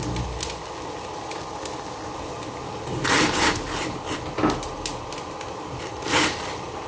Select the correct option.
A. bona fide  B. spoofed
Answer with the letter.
A